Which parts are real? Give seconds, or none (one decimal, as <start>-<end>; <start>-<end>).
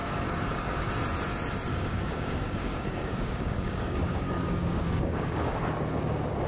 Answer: 0.9-1.7; 5.6-6.5